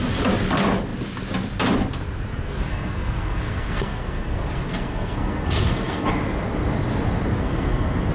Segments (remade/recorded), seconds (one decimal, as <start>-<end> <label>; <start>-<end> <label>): 0.0-2.3 recorded; 2.3-6.1 remade; 6.1-7.3 recorded; 7.3-8.1 remade